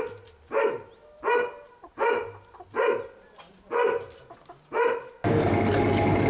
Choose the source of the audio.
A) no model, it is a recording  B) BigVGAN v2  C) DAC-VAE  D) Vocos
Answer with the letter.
A